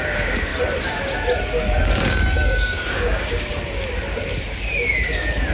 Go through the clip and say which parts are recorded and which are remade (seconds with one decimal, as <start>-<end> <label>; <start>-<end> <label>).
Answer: 0.0-0.5 remade; 0.5-1.4 recorded; 1.4-3.5 remade; 3.5-4.9 recorded; 4.9-5.5 remade